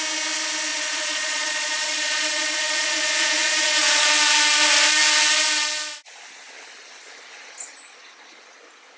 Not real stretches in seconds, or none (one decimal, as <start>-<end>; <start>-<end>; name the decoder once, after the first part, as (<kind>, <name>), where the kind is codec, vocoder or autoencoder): 0.7-4.1 (vocoder, Vocos)